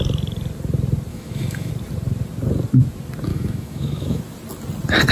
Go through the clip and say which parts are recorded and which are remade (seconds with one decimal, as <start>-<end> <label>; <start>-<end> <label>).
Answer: 0.0-1.1 recorded; 1.1-1.7 remade; 1.7-3.3 recorded; 3.3-4.2 remade; 4.2-5.1 recorded